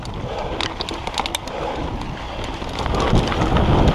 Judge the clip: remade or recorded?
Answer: recorded